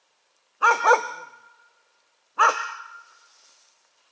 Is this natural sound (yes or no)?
yes